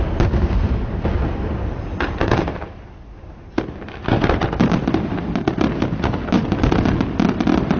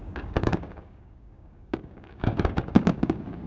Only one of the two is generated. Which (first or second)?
second